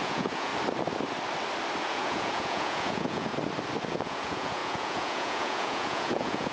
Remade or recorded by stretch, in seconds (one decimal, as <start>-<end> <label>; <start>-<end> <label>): 0.0-0.5 remade; 0.5-1.8 recorded; 1.8-3.3 remade; 3.3-3.9 recorded; 3.9-6.5 remade